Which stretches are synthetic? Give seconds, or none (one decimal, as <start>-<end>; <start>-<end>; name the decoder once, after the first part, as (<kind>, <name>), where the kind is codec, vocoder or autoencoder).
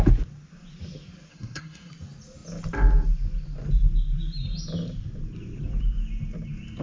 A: 1.3-1.9 (codec, SNAC)